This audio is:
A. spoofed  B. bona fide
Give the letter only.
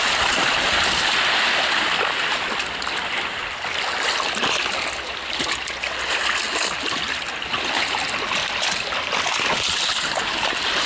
B